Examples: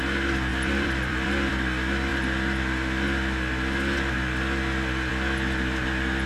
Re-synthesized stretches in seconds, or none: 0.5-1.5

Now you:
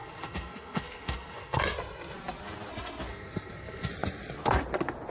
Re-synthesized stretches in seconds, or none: 0.0-1.6; 3.1-3.9